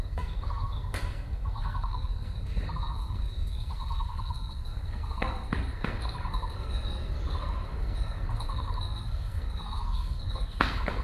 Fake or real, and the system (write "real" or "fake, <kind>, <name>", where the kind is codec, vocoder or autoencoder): fake, codec, SNAC